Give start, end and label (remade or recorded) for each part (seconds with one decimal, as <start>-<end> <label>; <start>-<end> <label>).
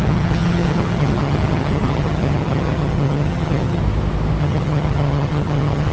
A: 0.0-3.8 remade; 3.8-4.4 recorded; 4.4-5.9 remade